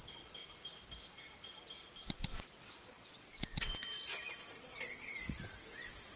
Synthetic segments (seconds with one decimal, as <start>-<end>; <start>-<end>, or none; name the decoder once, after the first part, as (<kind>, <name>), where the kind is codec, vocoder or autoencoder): 0.0-0.4 (vocoder, WaveNeXt); 2.6-3.7; 4.5-6.2